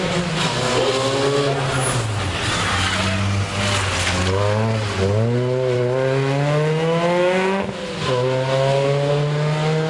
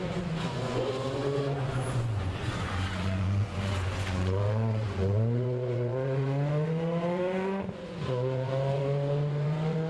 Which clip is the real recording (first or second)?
first